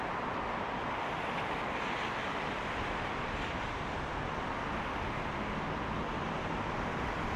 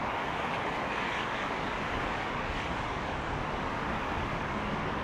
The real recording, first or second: first